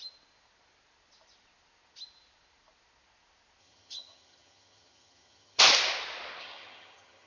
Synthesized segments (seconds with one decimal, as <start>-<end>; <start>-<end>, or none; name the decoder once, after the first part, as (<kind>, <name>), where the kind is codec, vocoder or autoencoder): 3.6-5.6 (vocoder, HiFi-GAN); 6.4-7.3